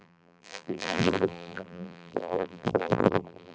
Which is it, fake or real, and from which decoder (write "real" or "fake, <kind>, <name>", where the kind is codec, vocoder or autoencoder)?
fake, vocoder, BigVGAN v2